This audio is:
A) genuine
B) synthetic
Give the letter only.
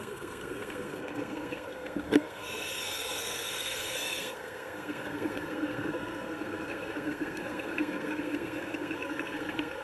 B